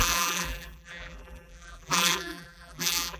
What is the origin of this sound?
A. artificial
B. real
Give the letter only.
A